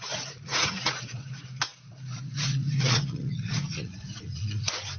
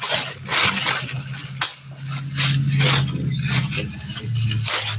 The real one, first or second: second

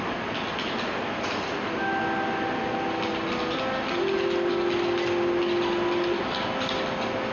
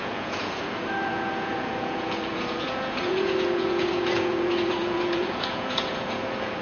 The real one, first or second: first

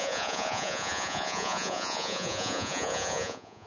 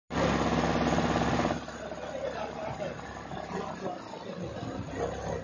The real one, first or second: second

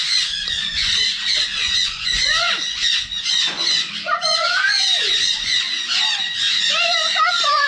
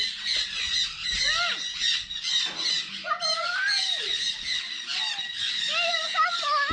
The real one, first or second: second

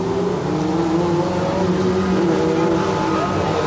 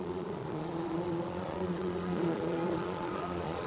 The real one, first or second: first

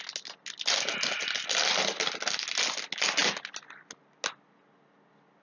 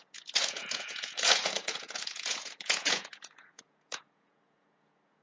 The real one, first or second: first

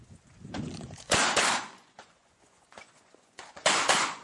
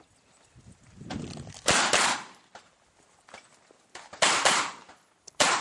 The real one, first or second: second